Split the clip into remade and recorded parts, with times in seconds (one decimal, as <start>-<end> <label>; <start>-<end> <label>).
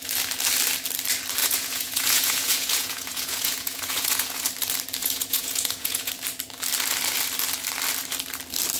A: 0.0-1.4 recorded; 1.4-4.4 remade; 4.4-5.0 recorded; 5.0-6.1 remade; 6.1-8.8 recorded